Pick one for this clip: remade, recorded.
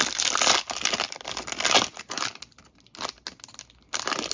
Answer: recorded